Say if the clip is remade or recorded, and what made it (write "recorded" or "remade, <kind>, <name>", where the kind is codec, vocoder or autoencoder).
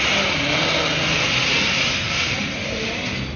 recorded